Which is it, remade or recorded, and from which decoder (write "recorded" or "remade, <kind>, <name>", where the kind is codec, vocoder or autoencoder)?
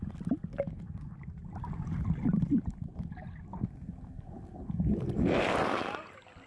recorded